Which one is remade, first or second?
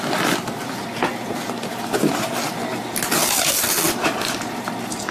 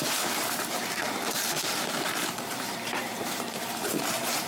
second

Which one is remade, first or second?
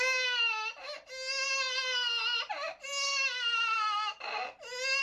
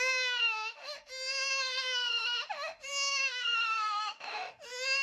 second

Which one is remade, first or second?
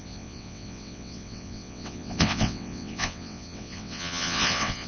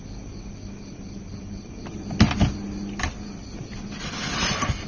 first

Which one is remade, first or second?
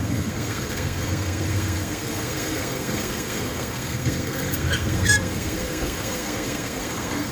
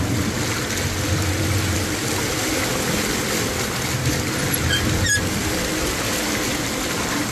first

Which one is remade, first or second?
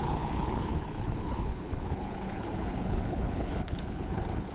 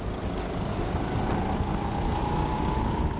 first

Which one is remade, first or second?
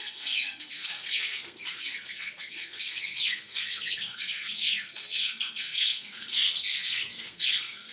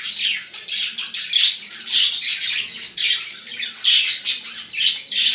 first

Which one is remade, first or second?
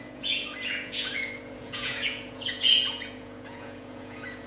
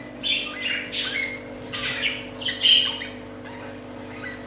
first